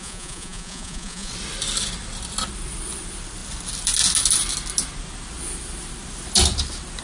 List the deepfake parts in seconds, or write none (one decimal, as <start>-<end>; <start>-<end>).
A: 0.0-1.3